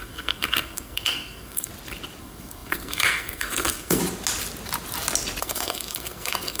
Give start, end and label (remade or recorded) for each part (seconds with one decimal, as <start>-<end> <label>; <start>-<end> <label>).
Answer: 0.0-1.7 remade; 1.7-2.2 recorded; 2.2-4.0 remade; 4.0-5.4 recorded; 5.4-6.6 remade